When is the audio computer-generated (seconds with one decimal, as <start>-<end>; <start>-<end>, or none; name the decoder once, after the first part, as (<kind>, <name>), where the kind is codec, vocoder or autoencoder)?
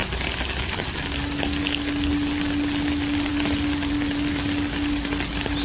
none